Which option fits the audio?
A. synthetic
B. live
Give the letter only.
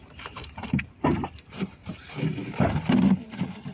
A